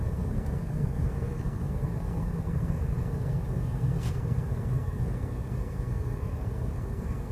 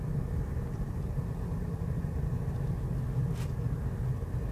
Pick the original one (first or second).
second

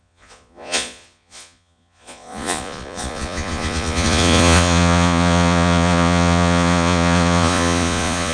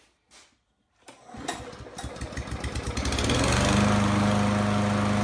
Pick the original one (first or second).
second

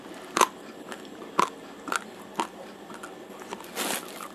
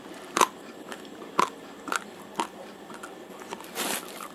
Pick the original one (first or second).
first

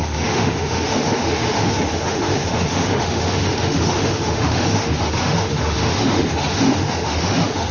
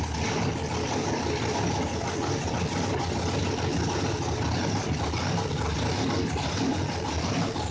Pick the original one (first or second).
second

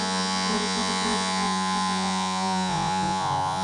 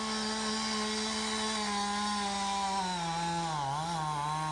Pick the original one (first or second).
second